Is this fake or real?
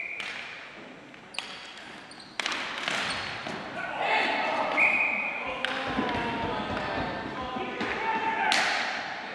real